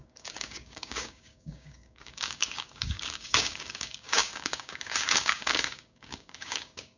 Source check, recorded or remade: remade